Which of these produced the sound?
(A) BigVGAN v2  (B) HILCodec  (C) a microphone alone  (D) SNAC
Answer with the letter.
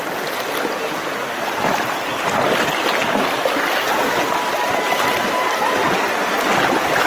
C